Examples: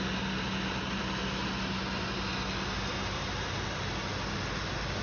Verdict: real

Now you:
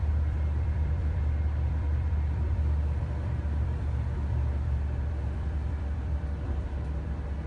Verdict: fake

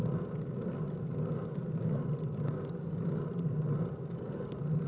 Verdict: real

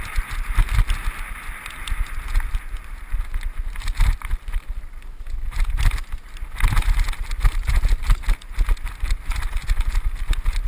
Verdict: real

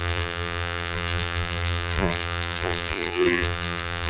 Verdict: fake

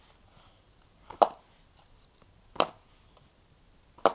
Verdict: fake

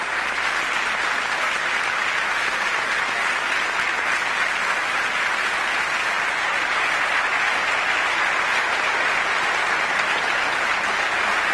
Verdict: real